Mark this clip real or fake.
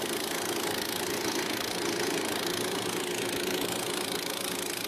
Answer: real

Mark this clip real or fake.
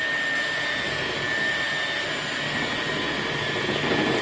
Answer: real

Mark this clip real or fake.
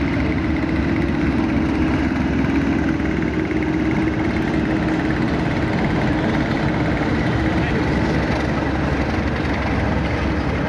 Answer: real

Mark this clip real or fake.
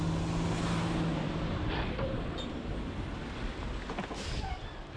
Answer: real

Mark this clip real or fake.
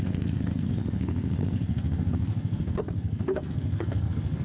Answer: fake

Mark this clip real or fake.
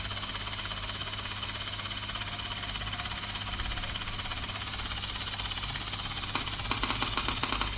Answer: real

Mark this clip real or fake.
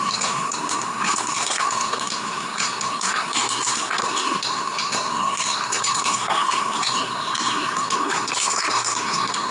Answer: fake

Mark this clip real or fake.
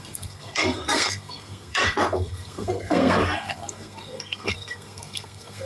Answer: fake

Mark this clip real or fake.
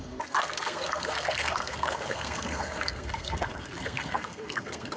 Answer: fake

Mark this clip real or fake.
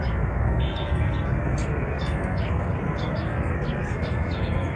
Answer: fake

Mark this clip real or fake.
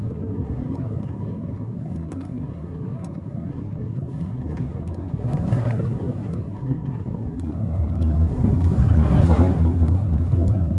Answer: fake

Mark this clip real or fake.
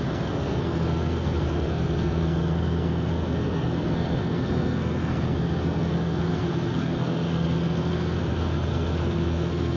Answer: fake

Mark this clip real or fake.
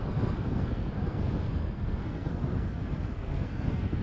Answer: fake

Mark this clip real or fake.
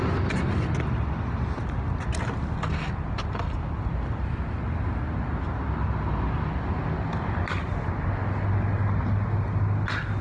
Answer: real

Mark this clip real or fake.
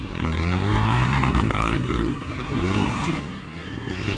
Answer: fake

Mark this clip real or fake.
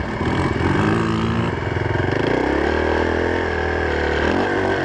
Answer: real